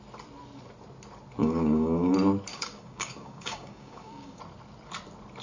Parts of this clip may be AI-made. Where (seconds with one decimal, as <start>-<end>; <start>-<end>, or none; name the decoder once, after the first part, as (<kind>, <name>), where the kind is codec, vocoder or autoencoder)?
1.4-2.1 (codec, DAC); 2.5-4.4